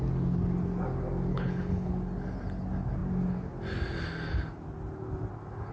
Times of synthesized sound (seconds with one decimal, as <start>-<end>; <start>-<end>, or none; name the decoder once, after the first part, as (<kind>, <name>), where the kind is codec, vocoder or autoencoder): 1.3-1.9 (codec, HILCodec)